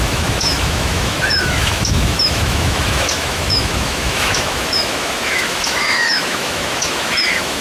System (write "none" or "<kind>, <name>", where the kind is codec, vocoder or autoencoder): autoencoder, DAC-VAE